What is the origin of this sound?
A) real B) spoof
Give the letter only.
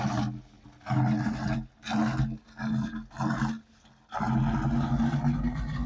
A